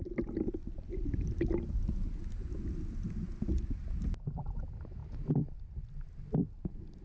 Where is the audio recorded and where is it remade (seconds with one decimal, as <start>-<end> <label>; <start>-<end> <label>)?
0.0-7.0 recorded